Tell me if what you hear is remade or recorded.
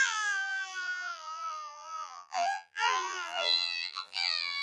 remade